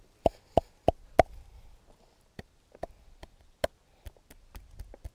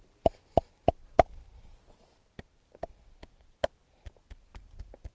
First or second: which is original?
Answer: second